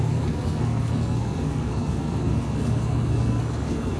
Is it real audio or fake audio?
fake